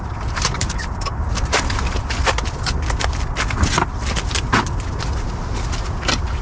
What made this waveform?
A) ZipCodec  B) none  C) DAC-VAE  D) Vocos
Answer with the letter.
B